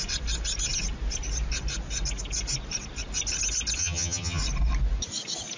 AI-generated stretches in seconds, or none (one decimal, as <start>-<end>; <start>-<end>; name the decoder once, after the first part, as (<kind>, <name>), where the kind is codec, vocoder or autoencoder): 3.8-4.4 (vocoder, HiFi-GAN)